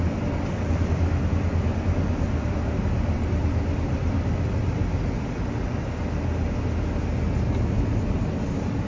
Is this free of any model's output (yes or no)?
yes